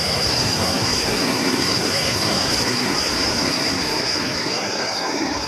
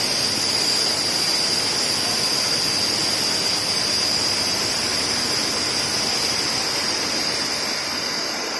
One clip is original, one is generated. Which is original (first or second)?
second